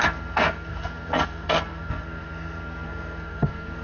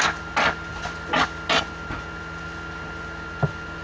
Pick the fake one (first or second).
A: first